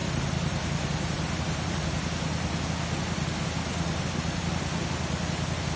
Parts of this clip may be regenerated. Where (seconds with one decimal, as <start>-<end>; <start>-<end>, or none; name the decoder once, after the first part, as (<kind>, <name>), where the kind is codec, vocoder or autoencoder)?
0.0-1.7 (vocoder, BigVGAN v2); 3.7-4.5